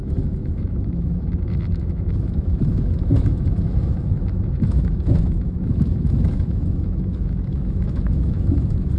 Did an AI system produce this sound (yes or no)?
yes